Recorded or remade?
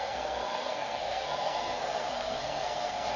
remade